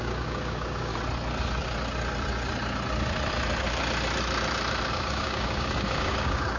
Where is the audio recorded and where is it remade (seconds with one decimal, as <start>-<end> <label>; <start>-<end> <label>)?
0.0-0.9 remade; 0.9-4.9 recorded; 4.9-6.6 remade